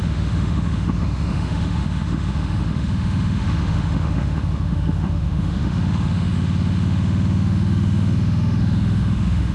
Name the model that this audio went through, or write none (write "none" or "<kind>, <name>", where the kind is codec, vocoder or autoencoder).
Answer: autoencoder, DAC-VAE